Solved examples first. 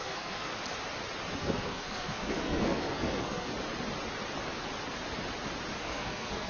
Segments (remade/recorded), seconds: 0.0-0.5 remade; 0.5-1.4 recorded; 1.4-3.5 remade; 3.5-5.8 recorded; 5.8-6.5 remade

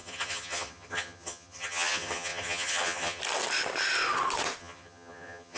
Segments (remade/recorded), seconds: 0.0-3.2 remade; 3.2-4.6 recorded; 4.6-5.6 remade

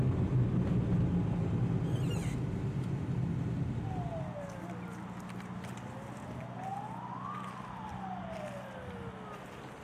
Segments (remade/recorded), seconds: 0.0-9.8 recorded

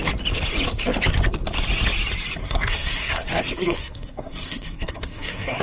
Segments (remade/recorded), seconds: 0.0-2.4 recorded; 2.4-5.6 remade

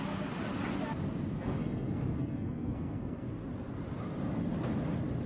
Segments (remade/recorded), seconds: 0.0-1.3 recorded; 1.3-3.3 remade; 3.3-5.3 recorded

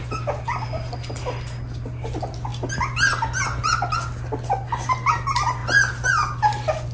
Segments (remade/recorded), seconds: 0.0-6.9 recorded

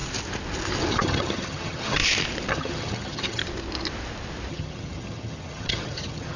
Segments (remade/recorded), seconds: 0.0-0.9 recorded; 0.9-2.0 remade; 2.0-2.5 recorded; 2.5-3.4 remade; 3.4-4.5 recorded; 4.5-6.4 remade

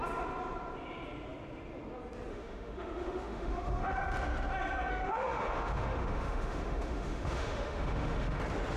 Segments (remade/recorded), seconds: 0.0-2.3 recorded; 2.3-4.0 remade; 4.0-4.9 recorded; 4.9-8.4 remade; 8.4-8.8 recorded